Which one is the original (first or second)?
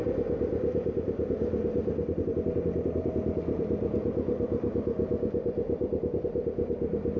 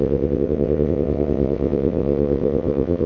first